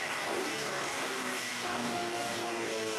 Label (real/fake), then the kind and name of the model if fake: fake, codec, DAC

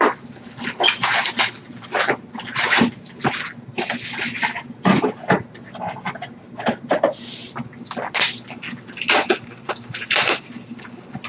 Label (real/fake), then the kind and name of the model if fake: real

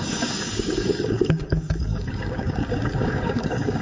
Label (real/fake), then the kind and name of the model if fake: fake, codec, DAC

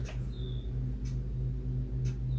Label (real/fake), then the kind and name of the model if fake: real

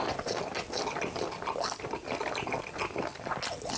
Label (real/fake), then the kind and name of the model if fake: real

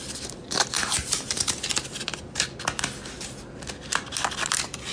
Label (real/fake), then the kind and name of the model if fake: real